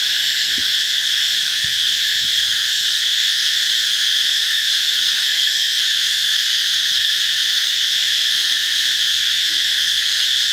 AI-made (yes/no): yes